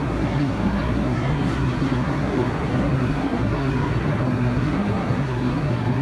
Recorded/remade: remade